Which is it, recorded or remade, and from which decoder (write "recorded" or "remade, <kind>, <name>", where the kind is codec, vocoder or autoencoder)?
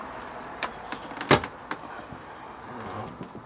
remade, vocoder, BigVGAN v2